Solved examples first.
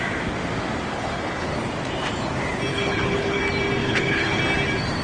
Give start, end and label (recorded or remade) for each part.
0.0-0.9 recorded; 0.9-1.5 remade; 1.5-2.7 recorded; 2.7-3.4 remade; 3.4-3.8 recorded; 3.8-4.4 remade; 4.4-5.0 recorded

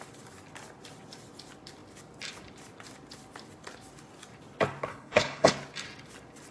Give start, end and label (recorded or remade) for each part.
0.0-4.9 recorded; 4.9-5.5 remade; 5.5-6.5 recorded

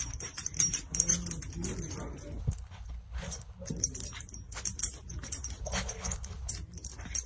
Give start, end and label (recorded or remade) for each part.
0.0-2.4 recorded; 2.4-3.7 remade; 3.7-5.6 recorded; 5.6-6.5 remade; 6.5-7.3 recorded

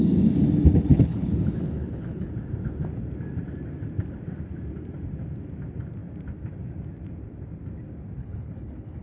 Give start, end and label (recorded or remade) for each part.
0.0-0.9 recorded; 0.9-2.3 remade; 2.3-8.2 recorded; 8.2-9.0 remade

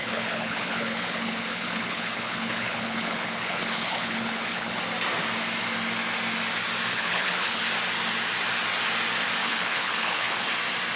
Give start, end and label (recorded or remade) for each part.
0.0-4.8 remade; 4.8-6.9 recorded; 6.9-7.6 remade; 7.6-9.4 recorded; 9.4-10.5 remade; 10.5-11.0 recorded